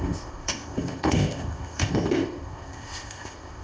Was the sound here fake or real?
fake